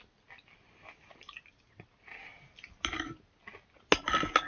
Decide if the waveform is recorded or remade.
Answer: recorded